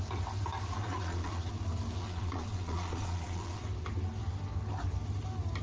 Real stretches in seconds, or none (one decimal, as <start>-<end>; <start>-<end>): 0.0-0.8; 1.4-2.0; 3.6-5.6